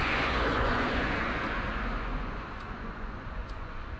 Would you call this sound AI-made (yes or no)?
yes